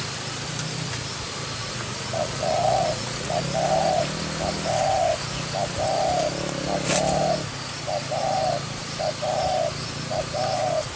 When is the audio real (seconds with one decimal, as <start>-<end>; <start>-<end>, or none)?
0.0-1.6; 3.4-11.0

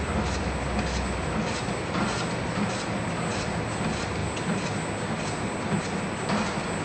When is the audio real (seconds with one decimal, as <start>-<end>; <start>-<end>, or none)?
0.0-6.8

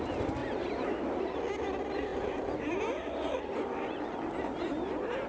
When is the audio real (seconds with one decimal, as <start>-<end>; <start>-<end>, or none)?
0.0-0.4; 1.2-2.1; 2.6-3.0; 4.1-5.3